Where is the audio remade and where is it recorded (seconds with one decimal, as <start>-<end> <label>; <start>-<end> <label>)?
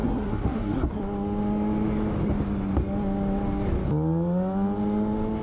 0.0-1.0 remade; 1.0-5.4 recorded